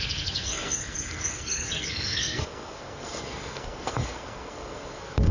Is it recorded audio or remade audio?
remade